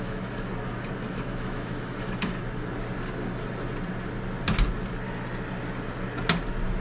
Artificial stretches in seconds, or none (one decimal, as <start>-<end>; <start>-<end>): 0.0-0.5; 1.1-2.3